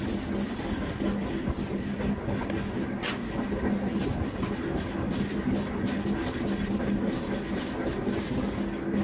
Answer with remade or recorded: recorded